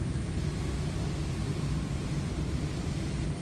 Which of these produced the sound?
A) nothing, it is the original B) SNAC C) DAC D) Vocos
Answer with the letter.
A